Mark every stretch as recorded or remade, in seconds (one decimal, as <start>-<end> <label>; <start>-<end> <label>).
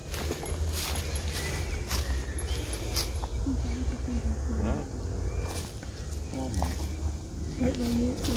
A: 0.0-8.4 recorded